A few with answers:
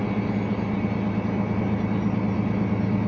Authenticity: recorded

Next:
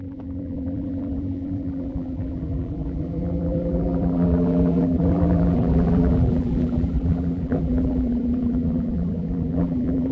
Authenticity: remade